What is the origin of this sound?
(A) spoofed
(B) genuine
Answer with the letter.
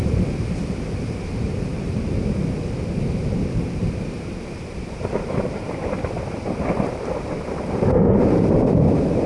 A